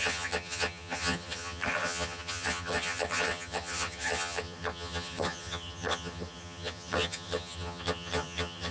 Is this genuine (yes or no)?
no